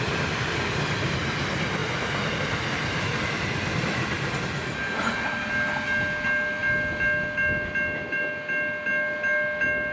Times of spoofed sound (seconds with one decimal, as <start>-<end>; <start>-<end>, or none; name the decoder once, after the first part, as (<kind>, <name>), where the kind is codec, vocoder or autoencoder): none